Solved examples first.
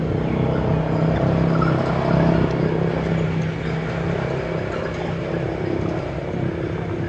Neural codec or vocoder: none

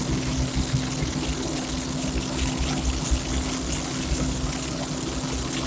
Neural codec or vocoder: none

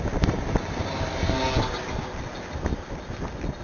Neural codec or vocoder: none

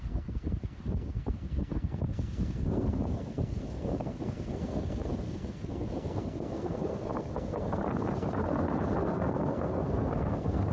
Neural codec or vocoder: codec, SNAC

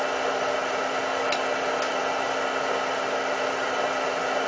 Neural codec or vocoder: none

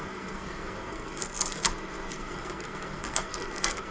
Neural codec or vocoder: codec, SNAC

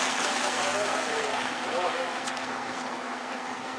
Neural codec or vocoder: codec, SNAC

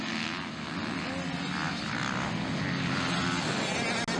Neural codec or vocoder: none